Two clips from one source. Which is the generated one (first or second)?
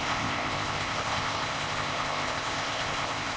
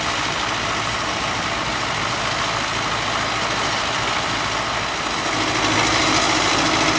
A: first